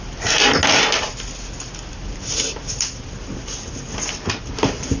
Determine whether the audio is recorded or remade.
recorded